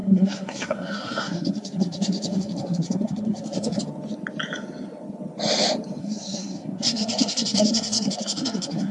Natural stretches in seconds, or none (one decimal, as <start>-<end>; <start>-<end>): 3.8-6.0

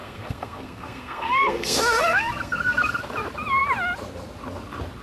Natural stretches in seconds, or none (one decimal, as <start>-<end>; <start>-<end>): 3.0-5.0

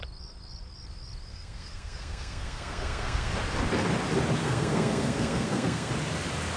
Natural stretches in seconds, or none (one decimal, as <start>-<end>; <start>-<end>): 0.0-1.3; 3.3-4.4; 5.9-6.6

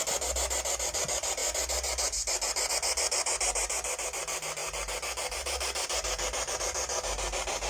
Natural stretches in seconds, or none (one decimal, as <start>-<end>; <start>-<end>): 0.0-7.7